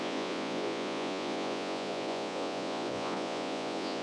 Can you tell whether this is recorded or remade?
remade